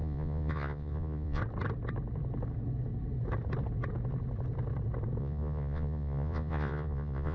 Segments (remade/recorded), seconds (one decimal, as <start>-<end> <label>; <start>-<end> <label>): 0.0-1.4 remade; 1.4-5.2 recorded; 5.2-7.3 remade